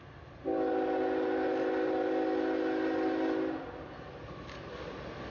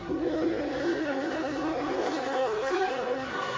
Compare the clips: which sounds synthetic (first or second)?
second